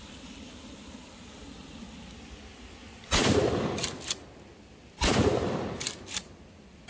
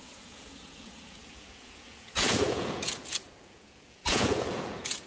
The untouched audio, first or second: first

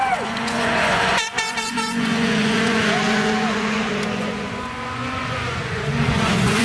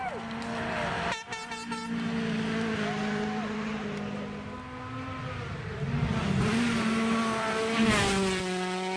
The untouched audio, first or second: second